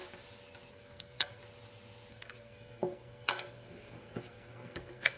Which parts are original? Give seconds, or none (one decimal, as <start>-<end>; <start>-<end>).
0.0-0.7; 1.4-2.1